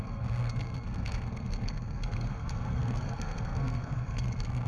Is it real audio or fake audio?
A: fake